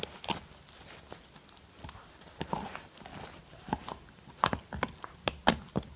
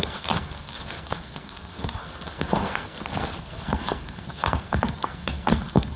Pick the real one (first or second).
first